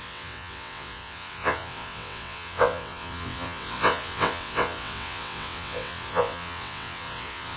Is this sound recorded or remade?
remade